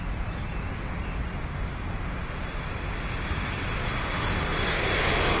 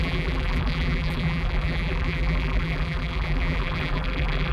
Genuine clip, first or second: first